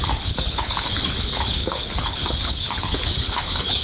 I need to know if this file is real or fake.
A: fake